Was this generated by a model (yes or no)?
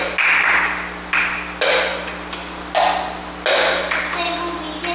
no